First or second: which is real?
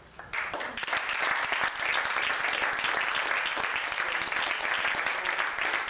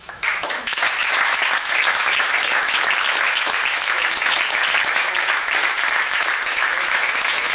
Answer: first